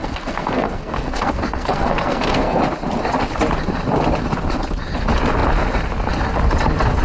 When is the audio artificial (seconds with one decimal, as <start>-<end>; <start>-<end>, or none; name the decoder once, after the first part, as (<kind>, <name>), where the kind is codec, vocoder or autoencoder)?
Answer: 0.0-2.6 (codec, SNAC)